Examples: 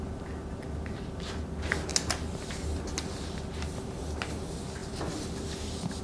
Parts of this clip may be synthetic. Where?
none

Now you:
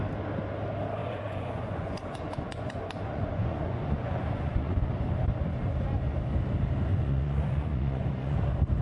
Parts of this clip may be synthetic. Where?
1.0-4.9 (vocoder, Vocos); 6.9-8.4

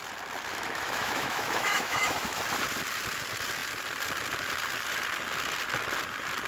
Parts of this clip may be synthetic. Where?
0.5-2.4 (autoencoder, DAC-VAE)

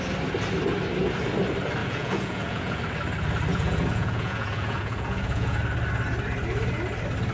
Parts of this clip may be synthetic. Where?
1.8-2.8 (vocoder, Vocos); 3.5-5.6

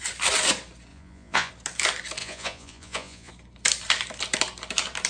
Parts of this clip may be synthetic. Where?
0.9-1.5 (vocoder, Vocos); 2.2-3.3